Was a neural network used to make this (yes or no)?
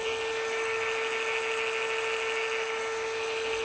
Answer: no